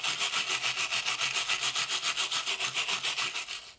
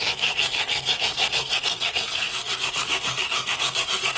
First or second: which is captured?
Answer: first